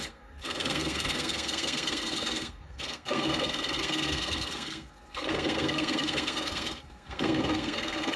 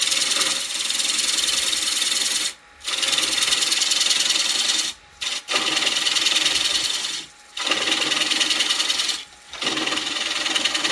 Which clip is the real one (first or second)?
second